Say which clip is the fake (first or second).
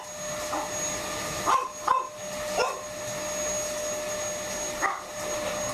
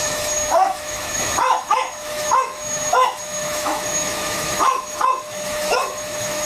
second